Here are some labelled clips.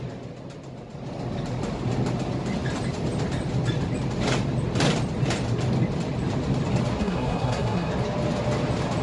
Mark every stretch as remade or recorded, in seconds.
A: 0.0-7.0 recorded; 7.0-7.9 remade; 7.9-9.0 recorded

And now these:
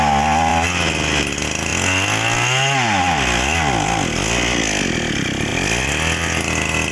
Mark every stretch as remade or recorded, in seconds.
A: 0.0-6.9 recorded

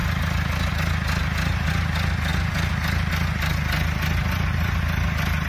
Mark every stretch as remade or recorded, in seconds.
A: 0.0-1.2 recorded; 1.2-1.7 remade; 1.7-2.3 recorded; 2.3-3.1 remade; 3.1-5.5 recorded

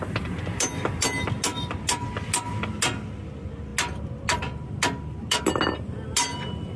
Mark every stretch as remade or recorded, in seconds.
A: 0.0-6.8 recorded